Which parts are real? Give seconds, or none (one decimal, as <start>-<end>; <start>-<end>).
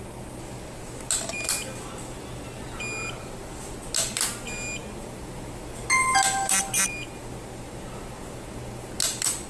0.0-9.5